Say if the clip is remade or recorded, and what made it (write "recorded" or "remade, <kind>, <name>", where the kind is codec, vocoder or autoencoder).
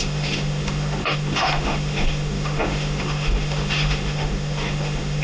remade, autoencoder, DAC-VAE